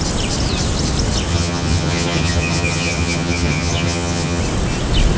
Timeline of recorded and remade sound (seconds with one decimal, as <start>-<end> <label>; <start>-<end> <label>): 0.0-1.3 recorded; 1.3-4.4 remade; 4.4-5.2 recorded